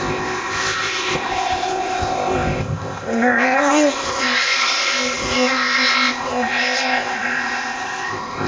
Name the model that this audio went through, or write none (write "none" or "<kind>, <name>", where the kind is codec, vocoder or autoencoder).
codec, ZipCodec